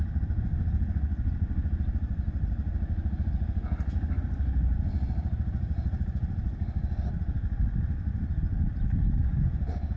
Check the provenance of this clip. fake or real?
real